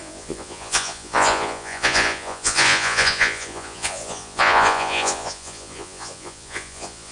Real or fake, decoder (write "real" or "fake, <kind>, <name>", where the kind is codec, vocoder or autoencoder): fake, vocoder, Vocos